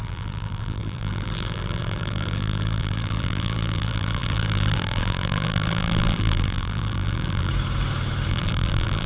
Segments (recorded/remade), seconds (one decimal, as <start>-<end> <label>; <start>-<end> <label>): 0.0-7.5 remade; 7.5-8.3 recorded; 8.3-9.1 remade